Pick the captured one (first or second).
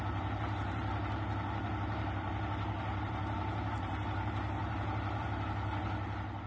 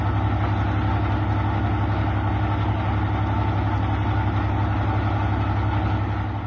second